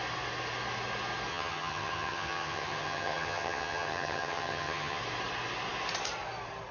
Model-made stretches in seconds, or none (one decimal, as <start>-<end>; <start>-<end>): 1.3-5.0